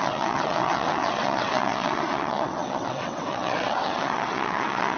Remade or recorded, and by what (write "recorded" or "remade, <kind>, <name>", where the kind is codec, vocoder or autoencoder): remade, vocoder, WaveNeXt